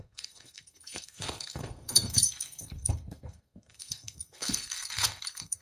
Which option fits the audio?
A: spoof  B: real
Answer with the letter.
A